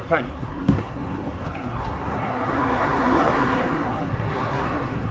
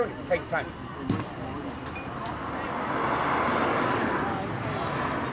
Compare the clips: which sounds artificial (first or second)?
first